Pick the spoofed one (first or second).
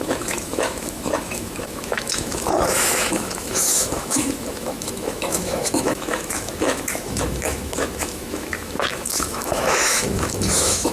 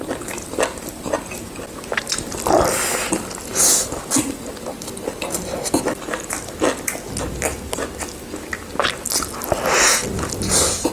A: first